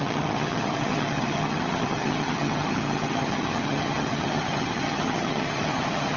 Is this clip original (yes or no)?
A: no